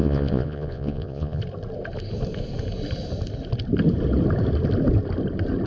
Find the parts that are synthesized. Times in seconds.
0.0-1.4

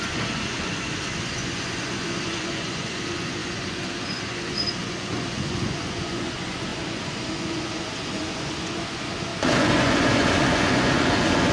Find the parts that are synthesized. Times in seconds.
0.0-11.5

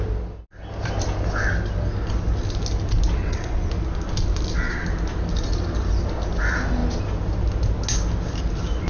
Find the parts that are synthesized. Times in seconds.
3.2-3.7

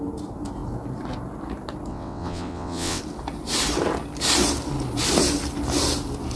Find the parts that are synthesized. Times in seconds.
1.9-3.0